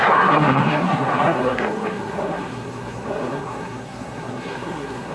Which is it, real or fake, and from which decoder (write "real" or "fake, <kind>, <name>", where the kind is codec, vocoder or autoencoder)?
fake, codec, SNAC